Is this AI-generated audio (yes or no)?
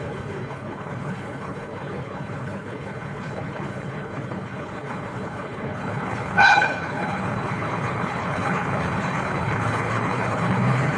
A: yes